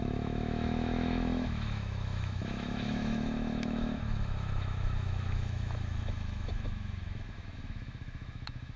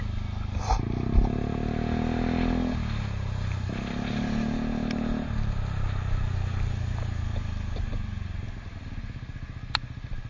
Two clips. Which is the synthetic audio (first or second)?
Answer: first